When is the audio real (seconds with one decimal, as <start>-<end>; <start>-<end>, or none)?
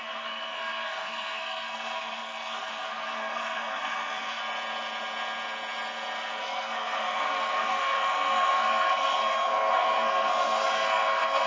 4.4-6.4